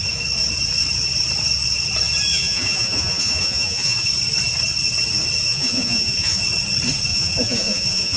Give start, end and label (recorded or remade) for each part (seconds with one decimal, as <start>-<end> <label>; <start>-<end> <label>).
0.0-2.3 recorded; 2.3-4.1 remade; 4.1-5.5 recorded; 5.5-6.4 remade; 6.4-7.1 recorded; 7.1-8.2 remade